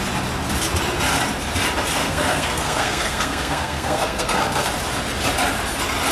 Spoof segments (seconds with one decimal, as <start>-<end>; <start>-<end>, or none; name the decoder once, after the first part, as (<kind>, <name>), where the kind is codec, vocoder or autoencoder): 2.0-4.7 (codec, SNAC)